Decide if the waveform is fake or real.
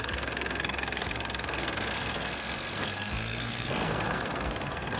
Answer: fake